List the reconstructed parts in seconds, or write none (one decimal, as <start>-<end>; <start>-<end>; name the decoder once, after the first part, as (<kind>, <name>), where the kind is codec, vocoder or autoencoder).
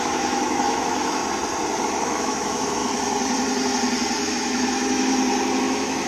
0.0-1.2 (autoencoder, DAC-VAE); 1.8-2.8; 4.2-5.1; 5.6-6.1